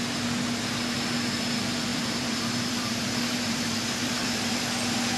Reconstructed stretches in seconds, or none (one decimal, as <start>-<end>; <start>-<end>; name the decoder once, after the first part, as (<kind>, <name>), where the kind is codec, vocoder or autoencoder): 1.9-4.5 (vocoder, BigVGAN v2)

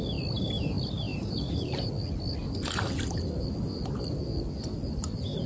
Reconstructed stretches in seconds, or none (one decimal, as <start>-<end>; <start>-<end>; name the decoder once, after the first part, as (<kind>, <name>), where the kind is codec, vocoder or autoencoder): 1.1-1.9 (vocoder, BigVGAN v2)

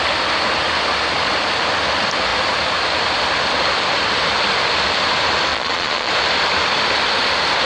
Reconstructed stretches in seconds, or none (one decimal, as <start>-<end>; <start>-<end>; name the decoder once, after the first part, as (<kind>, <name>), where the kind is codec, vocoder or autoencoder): 5.5-6.1 (vocoder, Vocos)